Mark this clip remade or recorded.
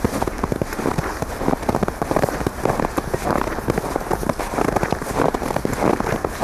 recorded